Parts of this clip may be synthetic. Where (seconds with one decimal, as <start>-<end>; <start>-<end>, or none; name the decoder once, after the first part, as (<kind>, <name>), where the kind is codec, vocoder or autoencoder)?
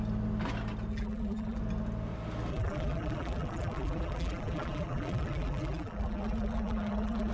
0.9-1.6 (vocoder, BigVGAN v2); 2.5-7.3